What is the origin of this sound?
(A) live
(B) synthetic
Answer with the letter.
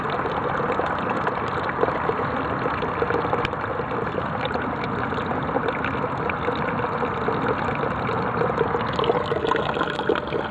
A